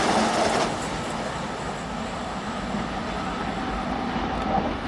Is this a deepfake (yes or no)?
no